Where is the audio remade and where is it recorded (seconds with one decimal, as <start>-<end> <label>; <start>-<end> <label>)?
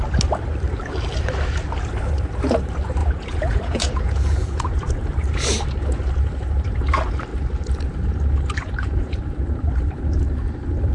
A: 0.0-3.0 recorded; 3.0-5.1 remade; 5.1-8.6 recorded; 8.6-9.3 remade; 9.3-10.9 recorded